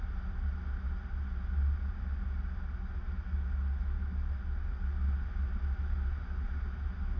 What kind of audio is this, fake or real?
real